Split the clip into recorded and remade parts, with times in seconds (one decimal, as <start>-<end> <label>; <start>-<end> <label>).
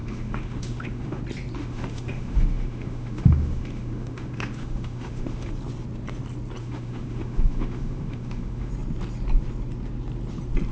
0.0-1.2 remade; 1.2-1.6 recorded; 1.6-5.5 remade; 5.5-6.6 recorded; 6.6-8.7 remade; 8.7-10.7 recorded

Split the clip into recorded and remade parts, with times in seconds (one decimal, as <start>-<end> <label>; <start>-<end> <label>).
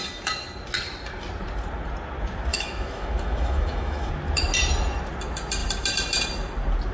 0.0-2.5 recorded; 2.5-4.1 remade; 4.1-6.9 recorded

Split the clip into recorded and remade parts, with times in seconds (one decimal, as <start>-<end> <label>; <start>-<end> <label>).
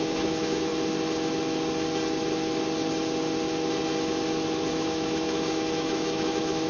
0.0-0.7 remade; 0.7-4.7 recorded; 4.7-6.7 remade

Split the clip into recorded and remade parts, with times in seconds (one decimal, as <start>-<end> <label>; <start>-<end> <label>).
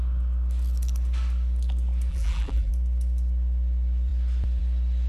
0.0-2.1 recorded; 2.1-2.7 remade; 2.7-5.1 recorded